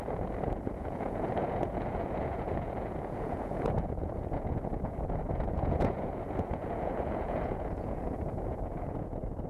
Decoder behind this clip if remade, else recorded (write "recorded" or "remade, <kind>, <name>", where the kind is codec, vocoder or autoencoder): remade, vocoder, Vocos